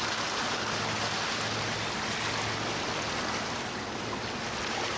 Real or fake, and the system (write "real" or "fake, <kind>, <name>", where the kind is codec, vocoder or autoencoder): real